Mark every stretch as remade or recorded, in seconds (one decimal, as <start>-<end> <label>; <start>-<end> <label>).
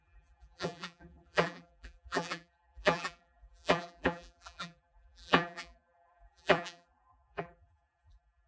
0.0-8.5 remade